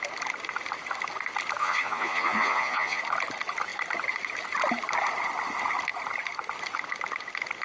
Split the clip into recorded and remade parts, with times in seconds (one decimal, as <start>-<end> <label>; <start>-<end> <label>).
0.0-1.6 recorded; 1.6-3.0 remade; 3.0-7.6 recorded

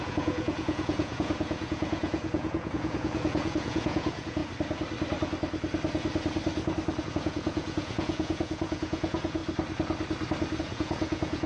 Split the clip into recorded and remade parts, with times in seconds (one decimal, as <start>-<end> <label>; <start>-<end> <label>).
0.0-4.4 remade; 4.4-7.0 recorded; 7.0-9.4 remade; 9.4-10.6 recorded; 10.6-11.5 remade